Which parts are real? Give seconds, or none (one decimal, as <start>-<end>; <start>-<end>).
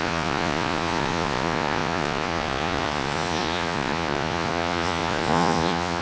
none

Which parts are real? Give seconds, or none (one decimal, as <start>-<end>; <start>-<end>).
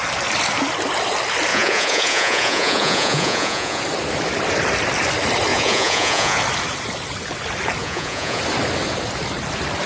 0.0-1.5; 3.8-5.5; 6.4-7.8; 8.4-9.9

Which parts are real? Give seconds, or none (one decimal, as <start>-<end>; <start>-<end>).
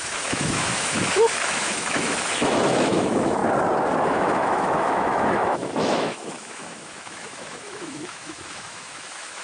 3.4-4.0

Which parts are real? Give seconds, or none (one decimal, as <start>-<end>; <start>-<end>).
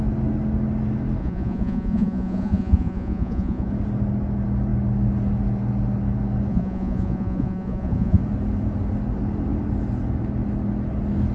0.0-1.2; 3.7-6.5; 8.2-11.3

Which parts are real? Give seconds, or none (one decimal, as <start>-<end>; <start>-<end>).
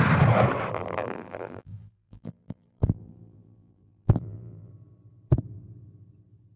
0.0-0.7; 4.7-6.6